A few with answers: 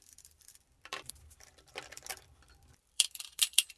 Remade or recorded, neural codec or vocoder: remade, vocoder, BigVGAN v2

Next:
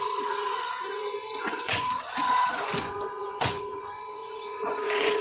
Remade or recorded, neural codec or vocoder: remade, vocoder, Vocos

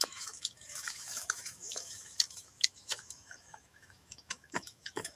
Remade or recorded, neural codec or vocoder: remade, autoencoder, DAC-VAE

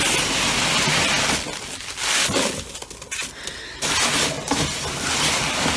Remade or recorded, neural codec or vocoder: recorded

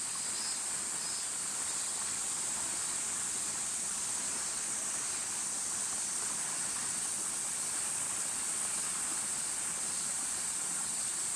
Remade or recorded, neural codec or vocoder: recorded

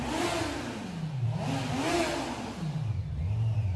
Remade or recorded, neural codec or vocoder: recorded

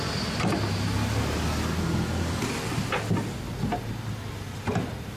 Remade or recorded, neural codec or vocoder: recorded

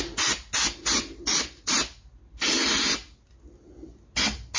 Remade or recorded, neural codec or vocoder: recorded